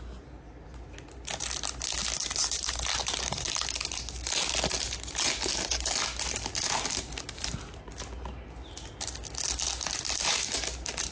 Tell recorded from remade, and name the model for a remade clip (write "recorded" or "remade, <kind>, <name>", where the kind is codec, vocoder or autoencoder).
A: recorded